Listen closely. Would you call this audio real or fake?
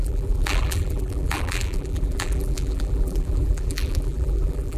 fake